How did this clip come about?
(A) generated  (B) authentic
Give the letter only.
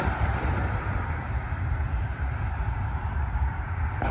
A